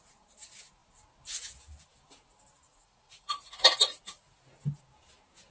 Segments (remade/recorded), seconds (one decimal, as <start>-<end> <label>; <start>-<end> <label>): 0.0-2.7 recorded; 2.7-4.4 remade; 4.4-5.5 recorded